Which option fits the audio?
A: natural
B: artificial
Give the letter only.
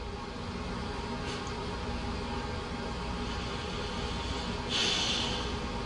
A